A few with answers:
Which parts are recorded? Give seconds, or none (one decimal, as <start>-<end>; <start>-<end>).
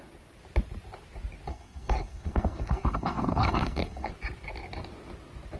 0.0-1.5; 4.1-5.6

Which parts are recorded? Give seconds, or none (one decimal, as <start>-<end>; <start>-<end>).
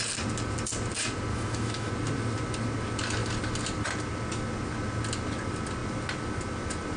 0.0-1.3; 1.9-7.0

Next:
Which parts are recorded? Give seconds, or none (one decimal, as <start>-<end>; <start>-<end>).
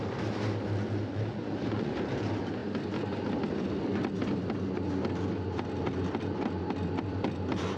0.0-1.1; 2.0-7.8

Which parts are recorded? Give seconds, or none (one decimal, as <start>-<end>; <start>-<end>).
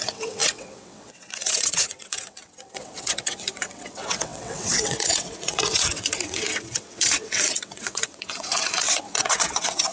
none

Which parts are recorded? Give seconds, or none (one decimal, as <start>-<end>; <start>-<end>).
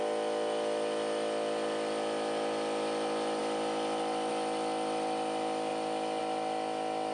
0.0-7.1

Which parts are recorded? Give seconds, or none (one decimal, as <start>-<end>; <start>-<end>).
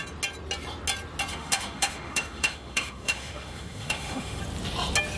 0.0-1.3; 4.4-5.2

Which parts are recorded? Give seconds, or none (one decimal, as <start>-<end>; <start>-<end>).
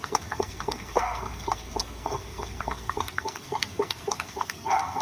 none